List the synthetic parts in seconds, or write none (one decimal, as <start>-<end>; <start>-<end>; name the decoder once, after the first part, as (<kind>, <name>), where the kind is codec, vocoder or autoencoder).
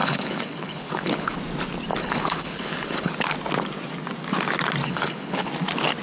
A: 0.0-1.4 (codec, HILCodec); 1.9-3.1; 4.8-5.5